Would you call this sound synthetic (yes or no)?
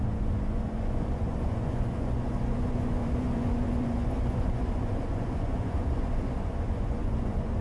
yes